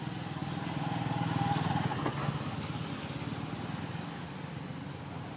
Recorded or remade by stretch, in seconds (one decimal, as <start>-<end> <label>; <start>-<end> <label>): 0.0-5.4 recorded